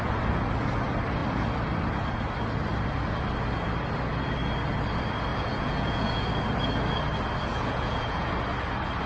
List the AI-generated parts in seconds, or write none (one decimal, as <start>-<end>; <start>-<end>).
5.3-6.3; 7.5-8.3